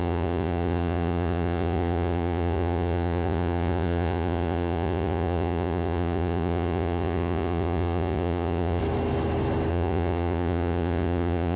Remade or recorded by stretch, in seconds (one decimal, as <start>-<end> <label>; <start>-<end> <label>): 0.0-8.8 remade; 8.8-9.7 recorded; 9.7-11.6 remade